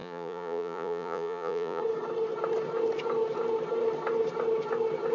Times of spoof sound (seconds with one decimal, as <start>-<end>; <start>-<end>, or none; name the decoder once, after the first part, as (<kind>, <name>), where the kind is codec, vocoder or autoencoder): 0.0-1.8 (vocoder, Vocos)